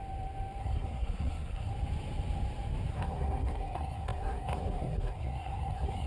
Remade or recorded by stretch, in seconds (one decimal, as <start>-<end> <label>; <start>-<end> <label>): 0.0-0.6 recorded; 0.6-1.7 remade; 1.7-2.9 recorded; 2.9-6.1 remade